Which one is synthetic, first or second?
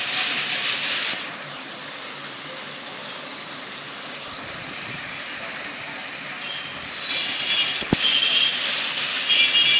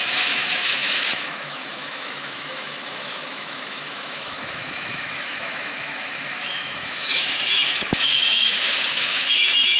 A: second